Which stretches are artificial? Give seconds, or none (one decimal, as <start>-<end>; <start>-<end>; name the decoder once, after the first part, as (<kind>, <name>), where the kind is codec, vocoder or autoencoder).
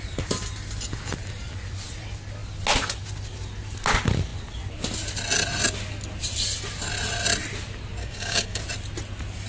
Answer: 8.0-8.6 (codec, DAC)